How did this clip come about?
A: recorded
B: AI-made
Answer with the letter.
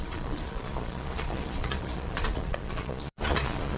B